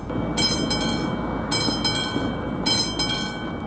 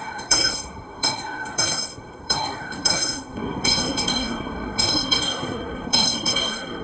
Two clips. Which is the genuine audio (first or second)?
first